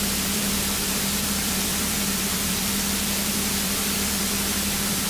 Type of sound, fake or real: fake